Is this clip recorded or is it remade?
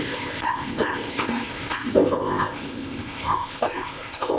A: remade